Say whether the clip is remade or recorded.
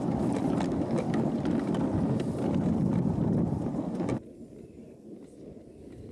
recorded